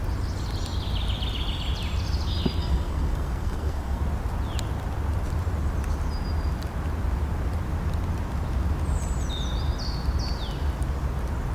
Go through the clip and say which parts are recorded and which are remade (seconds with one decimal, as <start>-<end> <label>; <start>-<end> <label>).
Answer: 0.0-2.6 recorded; 2.6-4.0 remade; 4.0-11.5 recorded